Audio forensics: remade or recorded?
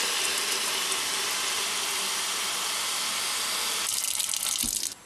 recorded